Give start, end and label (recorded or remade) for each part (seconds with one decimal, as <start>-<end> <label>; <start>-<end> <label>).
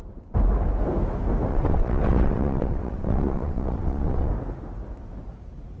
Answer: 0.0-1.5 recorded; 1.5-4.3 remade; 4.3-5.8 recorded